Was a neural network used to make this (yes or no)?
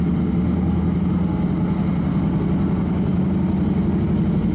no